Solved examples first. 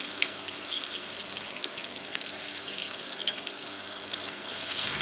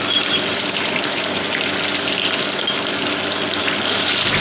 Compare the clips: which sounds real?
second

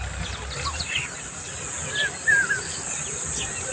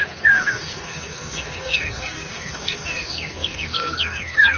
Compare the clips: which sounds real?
first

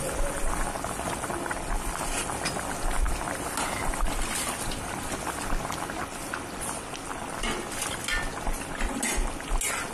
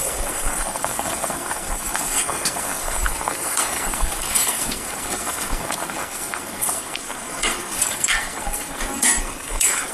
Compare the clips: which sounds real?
first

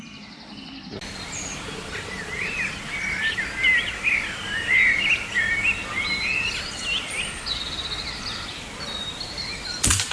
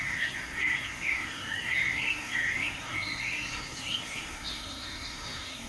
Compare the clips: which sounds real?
first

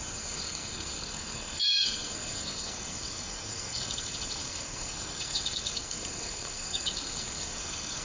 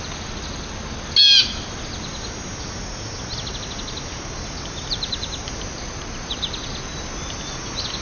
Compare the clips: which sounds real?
second